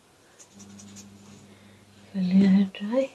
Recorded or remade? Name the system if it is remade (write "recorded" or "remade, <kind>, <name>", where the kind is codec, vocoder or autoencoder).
recorded